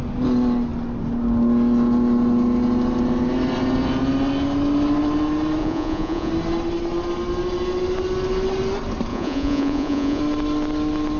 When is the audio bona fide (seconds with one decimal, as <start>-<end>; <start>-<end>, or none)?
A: 0.0-5.6; 6.3-9.1; 10.2-11.2

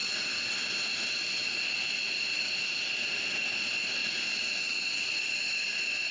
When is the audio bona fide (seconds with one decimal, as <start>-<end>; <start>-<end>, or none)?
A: 0.0-1.4; 2.5-4.0; 5.4-6.1

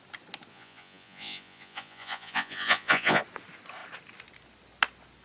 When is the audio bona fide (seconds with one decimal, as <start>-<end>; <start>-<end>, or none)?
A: 0.0-0.5; 3.2-5.2

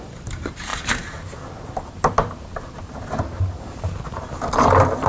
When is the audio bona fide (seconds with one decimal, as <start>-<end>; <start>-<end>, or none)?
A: 0.0-5.1

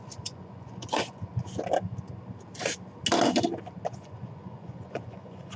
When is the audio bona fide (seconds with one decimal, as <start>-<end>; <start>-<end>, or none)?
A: 1.3-3.9